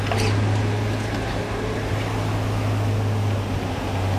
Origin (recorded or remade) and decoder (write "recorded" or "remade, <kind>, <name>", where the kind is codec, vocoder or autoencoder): recorded